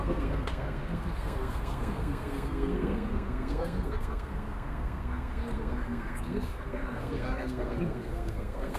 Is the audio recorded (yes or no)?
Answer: no